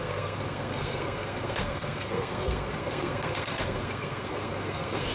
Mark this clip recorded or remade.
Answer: remade